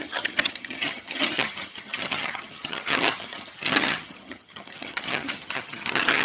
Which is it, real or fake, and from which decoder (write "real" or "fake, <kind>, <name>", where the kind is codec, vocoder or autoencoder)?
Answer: fake, vocoder, HiFi-GAN